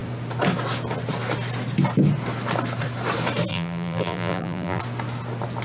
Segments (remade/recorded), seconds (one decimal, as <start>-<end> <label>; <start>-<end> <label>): 0.0-3.5 recorded; 3.5-4.8 remade; 4.8-5.6 recorded